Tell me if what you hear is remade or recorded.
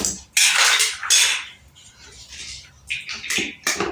recorded